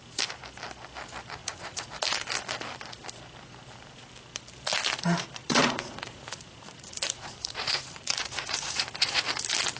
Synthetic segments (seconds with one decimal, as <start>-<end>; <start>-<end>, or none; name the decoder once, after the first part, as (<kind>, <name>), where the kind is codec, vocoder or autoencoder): 1.4-1.9 (vocoder, Vocos); 5.4-9.2